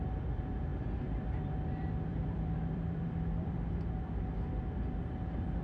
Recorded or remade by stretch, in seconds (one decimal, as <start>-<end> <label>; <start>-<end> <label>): 0.0-2.1 recorded; 2.1-3.7 remade; 3.7-5.6 recorded